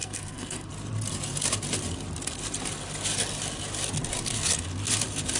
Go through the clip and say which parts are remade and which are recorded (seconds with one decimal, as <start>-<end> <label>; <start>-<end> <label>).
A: 0.0-0.7 remade; 0.7-5.4 recorded